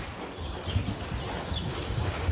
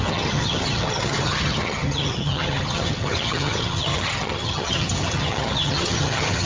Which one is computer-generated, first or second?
second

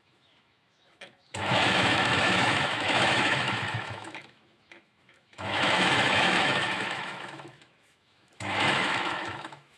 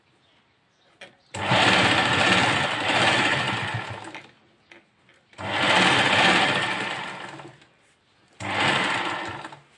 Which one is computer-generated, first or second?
first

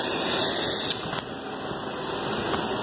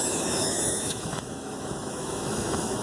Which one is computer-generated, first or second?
second